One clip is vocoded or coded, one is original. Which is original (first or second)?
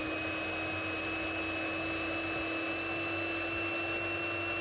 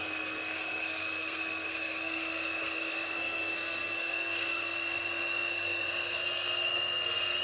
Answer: first